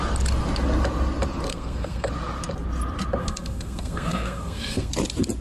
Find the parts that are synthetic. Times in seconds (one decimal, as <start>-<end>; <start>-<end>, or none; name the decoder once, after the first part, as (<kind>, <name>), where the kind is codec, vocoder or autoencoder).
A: 1.5-2.1 (codec, SNAC); 3.2-4.9